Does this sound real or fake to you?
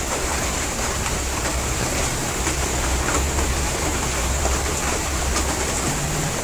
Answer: fake